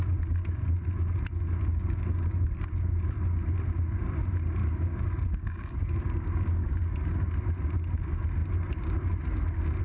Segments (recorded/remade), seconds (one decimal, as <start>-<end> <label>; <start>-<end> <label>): 0.0-1.7 recorded; 1.7-2.6 remade; 2.6-4.6 recorded; 4.6-6.7 remade; 6.7-9.8 recorded